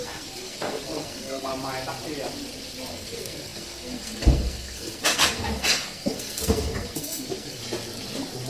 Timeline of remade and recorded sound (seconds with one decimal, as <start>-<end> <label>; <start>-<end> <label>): 0.0-1.5 remade; 1.5-2.9 recorded; 2.9-7.6 remade; 7.6-8.5 recorded

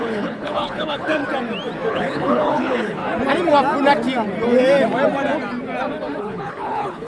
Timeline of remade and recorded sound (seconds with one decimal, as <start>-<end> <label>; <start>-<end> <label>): 0.0-1.2 remade; 1.2-1.9 recorded; 1.9-3.0 remade; 3.0-6.2 recorded; 6.2-7.1 remade

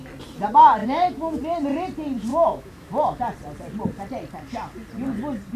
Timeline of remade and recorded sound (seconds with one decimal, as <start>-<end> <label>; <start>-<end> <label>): 0.0-0.8 recorded; 0.8-1.4 remade; 1.4-2.3 recorded; 2.3-3.2 remade; 3.2-5.6 recorded

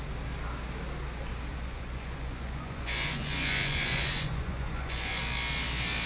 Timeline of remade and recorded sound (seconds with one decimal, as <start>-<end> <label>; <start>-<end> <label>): 0.0-1.5 recorded; 1.5-5.2 remade; 5.2-6.1 recorded

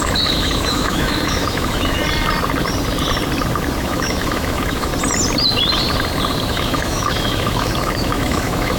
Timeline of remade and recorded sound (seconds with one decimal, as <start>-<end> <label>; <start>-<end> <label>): 0.0-2.0 remade; 2.0-3.8 recorded; 3.8-4.9 remade; 4.9-6.5 recorded; 6.5-8.8 remade

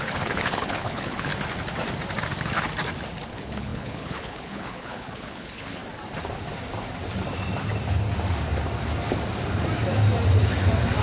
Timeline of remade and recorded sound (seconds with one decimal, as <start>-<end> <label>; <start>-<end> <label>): 0.0-1.3 remade; 1.3-3.3 recorded; 3.3-5.8 remade; 5.8-11.0 recorded